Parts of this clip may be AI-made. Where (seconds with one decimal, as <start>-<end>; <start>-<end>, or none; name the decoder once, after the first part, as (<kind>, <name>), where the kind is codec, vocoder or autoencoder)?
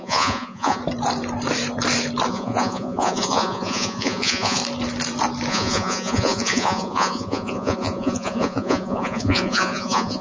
0.0-0.8 (vocoder, Vocos); 2.3-4.6; 5.5-10.2